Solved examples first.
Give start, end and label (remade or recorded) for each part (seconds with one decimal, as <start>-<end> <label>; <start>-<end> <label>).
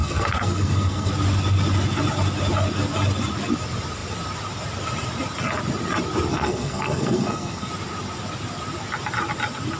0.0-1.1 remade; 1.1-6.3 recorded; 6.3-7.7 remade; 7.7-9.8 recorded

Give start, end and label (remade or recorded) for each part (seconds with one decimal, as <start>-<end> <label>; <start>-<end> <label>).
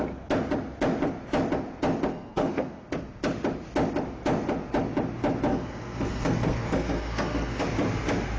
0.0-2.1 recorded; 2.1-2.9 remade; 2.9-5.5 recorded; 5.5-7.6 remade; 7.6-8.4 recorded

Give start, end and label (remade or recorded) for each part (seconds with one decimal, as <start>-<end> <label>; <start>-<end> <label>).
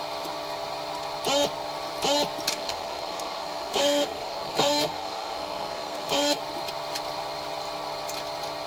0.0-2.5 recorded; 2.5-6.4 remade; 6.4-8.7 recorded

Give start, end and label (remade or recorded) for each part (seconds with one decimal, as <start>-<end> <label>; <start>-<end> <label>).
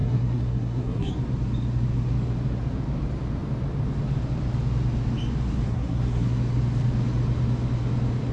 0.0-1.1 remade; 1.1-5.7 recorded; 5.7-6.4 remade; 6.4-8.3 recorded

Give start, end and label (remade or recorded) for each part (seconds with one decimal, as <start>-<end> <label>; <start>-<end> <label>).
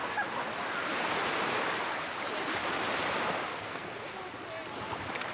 0.0-3.5 recorded; 3.5-4.2 remade; 4.2-5.3 recorded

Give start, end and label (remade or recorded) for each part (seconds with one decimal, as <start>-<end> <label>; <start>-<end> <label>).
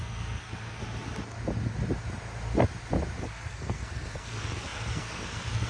0.0-0.8 remade; 0.8-3.2 recorded; 3.2-5.7 remade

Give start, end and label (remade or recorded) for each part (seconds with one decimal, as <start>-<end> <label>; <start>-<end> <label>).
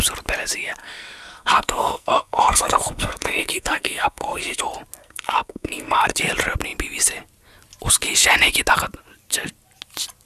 0.0-0.8 recorded; 0.8-4.6 remade; 4.6-5.0 recorded; 5.0-6.2 remade; 6.2-10.3 recorded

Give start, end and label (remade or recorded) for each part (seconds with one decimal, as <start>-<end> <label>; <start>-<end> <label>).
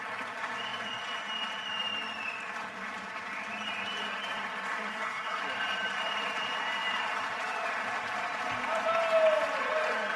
0.0-4.9 recorded; 4.9-5.4 remade; 5.4-10.2 recorded